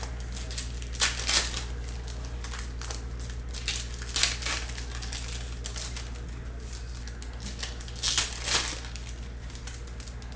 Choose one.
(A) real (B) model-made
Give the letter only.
A